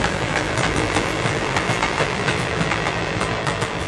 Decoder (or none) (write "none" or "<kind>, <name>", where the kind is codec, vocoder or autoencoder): vocoder, BigVGAN v2